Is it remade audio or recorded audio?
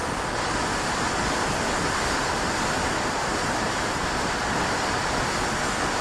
recorded